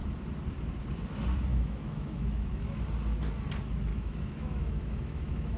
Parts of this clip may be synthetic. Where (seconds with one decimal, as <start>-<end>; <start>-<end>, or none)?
1.5-2.8; 3.9-5.6